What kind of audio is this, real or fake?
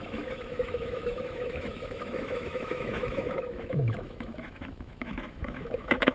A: fake